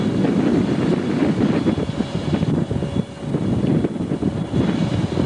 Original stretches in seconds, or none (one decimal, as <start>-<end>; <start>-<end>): 0.0-5.3